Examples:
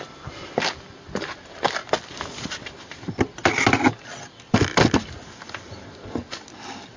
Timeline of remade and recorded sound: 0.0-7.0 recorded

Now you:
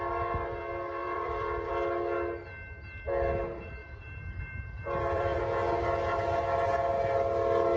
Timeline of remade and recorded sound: 0.0-1.0 recorded; 1.0-1.7 remade; 1.7-3.8 recorded; 3.8-5.4 remade; 5.4-7.8 recorded

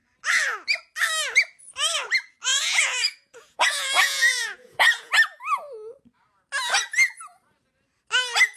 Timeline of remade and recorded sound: 0.0-2.5 recorded; 2.5-5.1 remade; 5.1-8.6 recorded

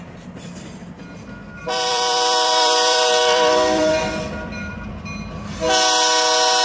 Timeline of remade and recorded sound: 0.0-1.6 recorded; 1.6-4.9 remade; 4.9-6.6 recorded

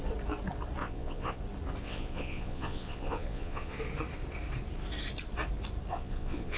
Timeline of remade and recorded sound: 0.0-0.8 recorded; 0.8-1.4 remade; 1.4-1.8 recorded; 1.8-3.8 remade; 3.8-5.9 recorded; 5.9-6.6 remade

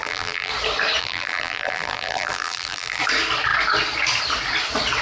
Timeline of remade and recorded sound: 0.0-0.5 remade; 0.5-1.0 recorded; 1.0-3.0 remade; 3.0-5.0 recorded

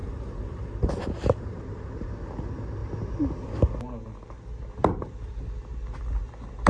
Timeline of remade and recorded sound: 0.0-1.6 remade; 1.6-6.7 recorded